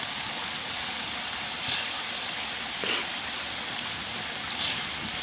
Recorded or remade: recorded